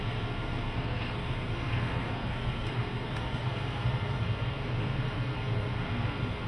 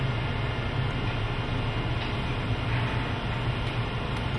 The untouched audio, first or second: second